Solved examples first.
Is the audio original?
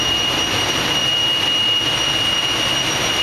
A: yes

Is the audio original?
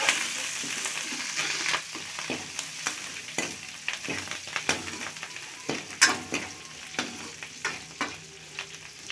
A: yes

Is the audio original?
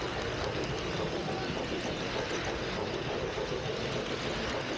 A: yes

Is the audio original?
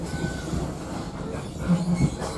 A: yes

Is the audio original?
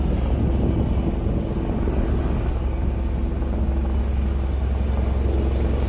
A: yes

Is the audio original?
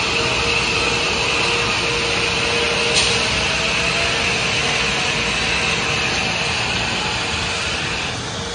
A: yes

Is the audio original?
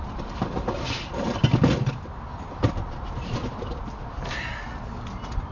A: yes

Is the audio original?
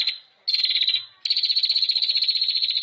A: yes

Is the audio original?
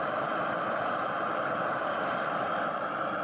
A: yes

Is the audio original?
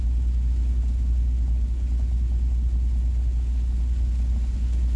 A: yes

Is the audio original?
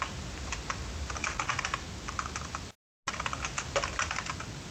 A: yes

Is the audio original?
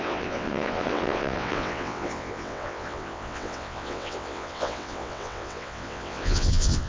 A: no